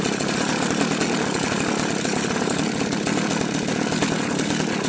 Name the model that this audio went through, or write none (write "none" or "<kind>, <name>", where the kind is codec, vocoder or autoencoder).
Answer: none